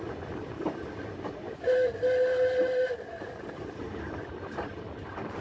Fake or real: real